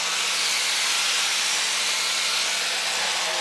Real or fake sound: real